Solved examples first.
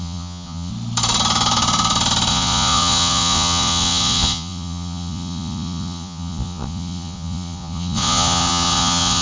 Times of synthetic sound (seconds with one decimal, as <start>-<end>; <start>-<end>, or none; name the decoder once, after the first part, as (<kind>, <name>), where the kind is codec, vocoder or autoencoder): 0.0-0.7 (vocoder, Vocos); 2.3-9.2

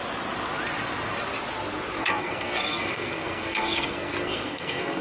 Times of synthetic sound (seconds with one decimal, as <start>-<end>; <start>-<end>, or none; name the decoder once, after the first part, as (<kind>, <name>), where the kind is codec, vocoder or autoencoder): 2.0-5.0 (codec, SNAC)

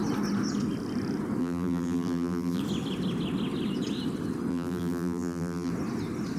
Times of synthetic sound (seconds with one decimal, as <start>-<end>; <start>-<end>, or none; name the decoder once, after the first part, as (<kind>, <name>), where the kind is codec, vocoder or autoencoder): 1.4-2.6 (vocoder, BigVGAN v2); 4.5-5.7

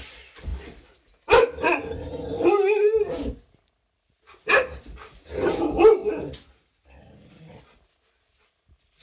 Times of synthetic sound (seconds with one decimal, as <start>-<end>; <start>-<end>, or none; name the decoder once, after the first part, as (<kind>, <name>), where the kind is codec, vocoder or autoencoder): 0.0-6.0 (vocoder, BigVGAN v2); 7.8-9.0

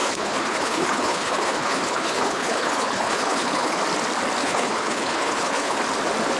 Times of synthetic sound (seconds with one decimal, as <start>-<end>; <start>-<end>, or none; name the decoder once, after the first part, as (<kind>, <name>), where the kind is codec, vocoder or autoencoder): 0.0-3.8 (codec, HILCodec); 4.4-5.8

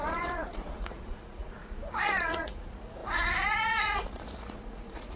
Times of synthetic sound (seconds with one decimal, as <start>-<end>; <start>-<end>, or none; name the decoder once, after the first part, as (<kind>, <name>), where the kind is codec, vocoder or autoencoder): 0.0-5.2 (vocoder, Vocos)

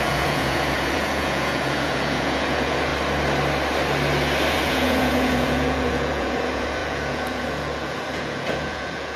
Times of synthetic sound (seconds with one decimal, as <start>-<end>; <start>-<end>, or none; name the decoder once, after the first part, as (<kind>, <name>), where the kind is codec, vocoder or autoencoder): 0.0-2.9 (vocoder, Vocos); 4.5-9.2

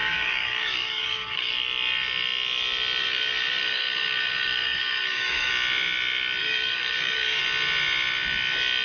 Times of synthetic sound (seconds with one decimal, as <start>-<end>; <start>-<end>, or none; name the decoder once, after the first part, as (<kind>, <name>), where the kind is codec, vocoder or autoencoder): 0.0-1.5 (codec, DAC); 3.0-5.5; 6.4-7.4